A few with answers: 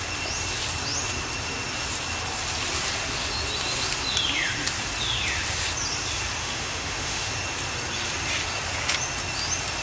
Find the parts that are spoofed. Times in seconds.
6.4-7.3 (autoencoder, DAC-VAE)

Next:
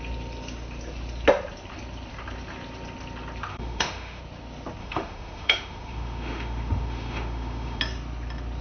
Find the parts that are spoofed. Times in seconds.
3.5-4.2 (autoencoder, DAC-VAE); 4.8-7.8

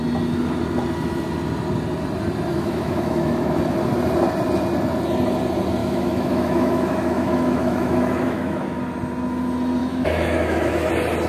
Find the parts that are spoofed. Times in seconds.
2.5-3.6 (autoencoder, DAC-VAE); 5.8-8.8; 9.8-10.9

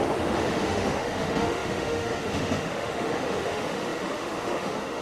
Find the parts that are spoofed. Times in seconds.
0.0-5.0 (autoencoder, DAC-VAE)

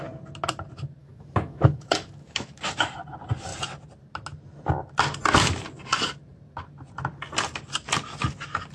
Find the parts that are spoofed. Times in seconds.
1.0-2.9 (autoencoder, DAC-VAE)

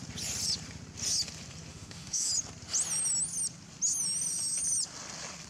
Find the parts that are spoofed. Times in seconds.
1.7-2.3 (autoencoder, DAC-VAE)

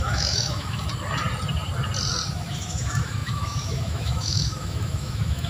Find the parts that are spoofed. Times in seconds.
0.0-0.9 (autoencoder, DAC-VAE); 2.3-5.5

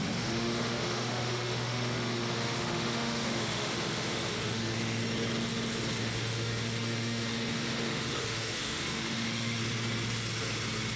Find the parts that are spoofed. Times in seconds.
0.0-5.0 (autoencoder, DAC-VAE); 6.0-9.6